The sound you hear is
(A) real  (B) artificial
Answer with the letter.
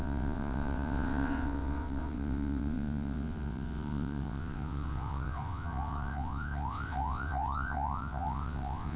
B